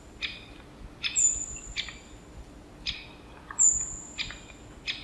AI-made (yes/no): no